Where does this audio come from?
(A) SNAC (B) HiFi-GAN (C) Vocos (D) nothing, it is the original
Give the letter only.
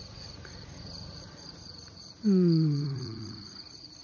C